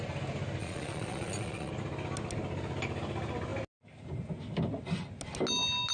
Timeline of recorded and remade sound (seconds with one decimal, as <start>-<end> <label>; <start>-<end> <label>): 0.0-0.6 recorded; 0.6-1.7 remade; 1.7-5.9 recorded